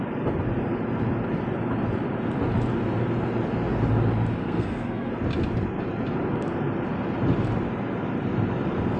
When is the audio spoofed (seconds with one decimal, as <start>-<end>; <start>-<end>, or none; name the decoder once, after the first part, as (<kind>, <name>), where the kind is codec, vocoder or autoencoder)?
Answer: 4.4-5.1 (codec, SNAC)